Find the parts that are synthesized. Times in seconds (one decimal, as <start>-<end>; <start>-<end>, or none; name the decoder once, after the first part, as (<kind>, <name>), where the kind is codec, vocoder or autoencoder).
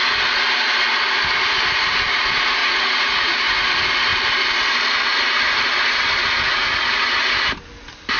2.6-3.6 (vocoder, Vocos); 6.5-7.0